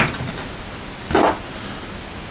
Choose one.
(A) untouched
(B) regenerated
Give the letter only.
A